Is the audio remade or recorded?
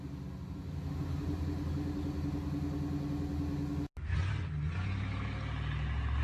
recorded